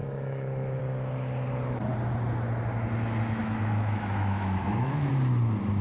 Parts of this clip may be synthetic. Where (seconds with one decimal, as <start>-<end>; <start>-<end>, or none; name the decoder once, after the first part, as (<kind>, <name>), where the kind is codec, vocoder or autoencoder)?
0.0-0.8 (autoencoder, DAC-VAE); 3.4-5.1